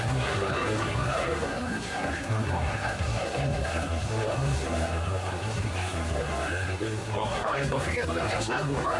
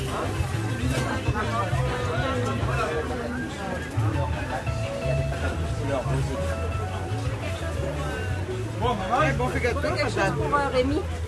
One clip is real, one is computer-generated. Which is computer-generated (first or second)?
first